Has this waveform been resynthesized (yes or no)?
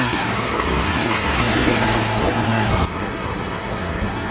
yes